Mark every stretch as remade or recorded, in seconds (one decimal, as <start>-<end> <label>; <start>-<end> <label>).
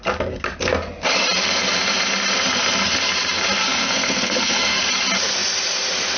0.0-3.6 recorded; 3.6-4.8 remade; 4.8-6.2 recorded